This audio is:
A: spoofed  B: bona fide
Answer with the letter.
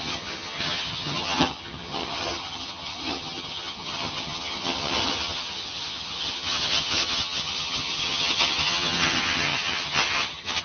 A